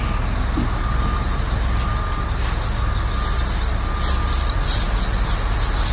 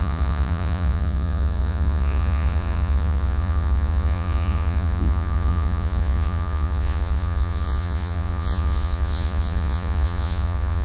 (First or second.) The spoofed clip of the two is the second